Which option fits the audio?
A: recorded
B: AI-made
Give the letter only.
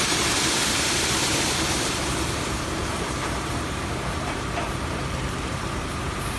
B